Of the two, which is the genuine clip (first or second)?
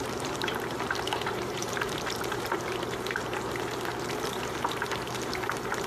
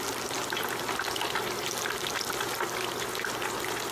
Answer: second